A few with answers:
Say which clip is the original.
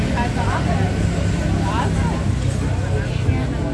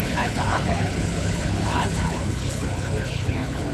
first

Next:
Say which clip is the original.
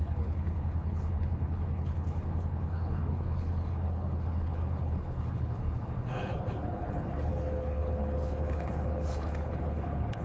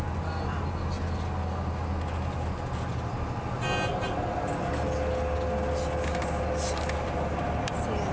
second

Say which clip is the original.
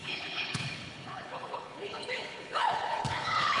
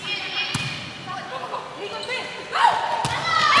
second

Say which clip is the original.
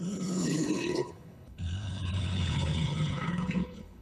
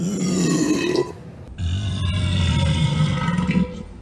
second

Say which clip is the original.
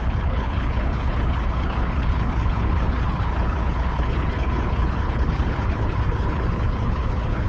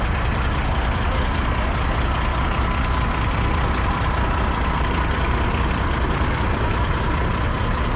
second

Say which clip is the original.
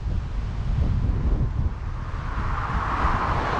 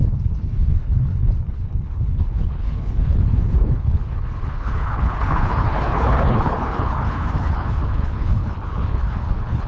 first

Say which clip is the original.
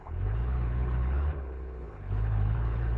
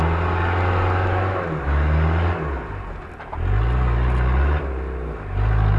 second